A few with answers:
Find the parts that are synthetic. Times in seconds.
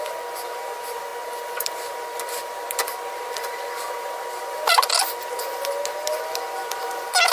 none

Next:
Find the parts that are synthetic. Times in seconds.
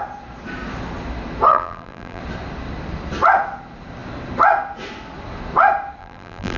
1.5-2.2 (vocoder, BigVGAN v2); 6.0-6.6